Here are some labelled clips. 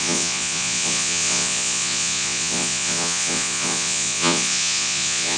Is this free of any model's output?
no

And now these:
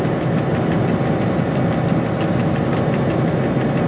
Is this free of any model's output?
yes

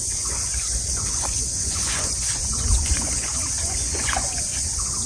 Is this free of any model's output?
no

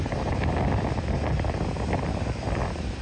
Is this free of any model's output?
yes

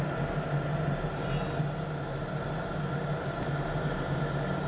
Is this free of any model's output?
yes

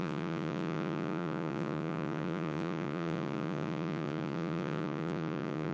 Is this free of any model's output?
no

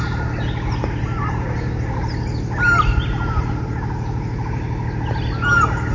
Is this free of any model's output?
yes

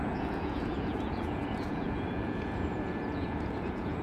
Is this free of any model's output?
no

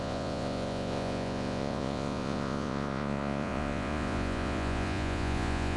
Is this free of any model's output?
no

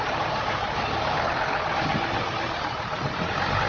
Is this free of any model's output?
yes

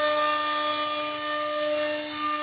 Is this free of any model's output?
yes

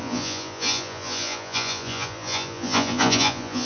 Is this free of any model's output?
no